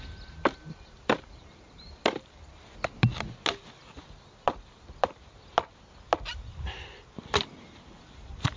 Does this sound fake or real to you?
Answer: real